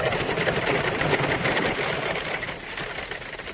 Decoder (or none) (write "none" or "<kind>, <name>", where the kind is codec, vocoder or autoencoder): none